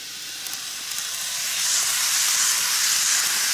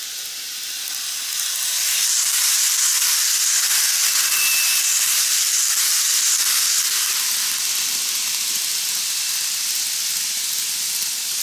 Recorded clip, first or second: second